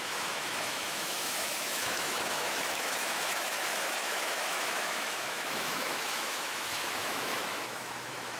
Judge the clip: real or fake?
fake